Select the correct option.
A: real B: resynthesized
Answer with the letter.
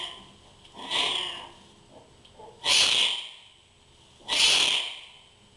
A